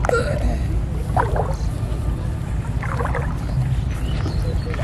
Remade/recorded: recorded